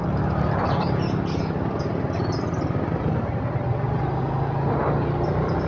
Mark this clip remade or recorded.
recorded